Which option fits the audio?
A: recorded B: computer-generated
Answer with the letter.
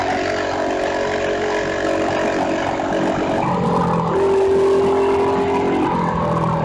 A